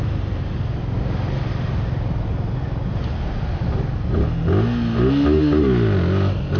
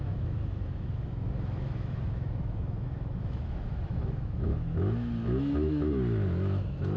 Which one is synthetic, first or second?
second